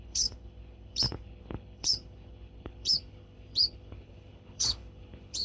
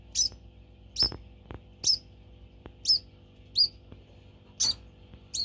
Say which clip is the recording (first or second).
second